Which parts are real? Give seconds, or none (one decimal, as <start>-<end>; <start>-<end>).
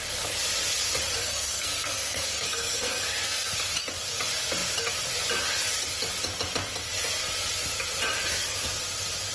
0.0-1.2; 3.6-9.3